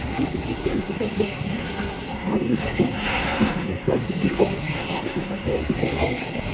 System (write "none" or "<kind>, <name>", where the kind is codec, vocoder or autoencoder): codec, SNAC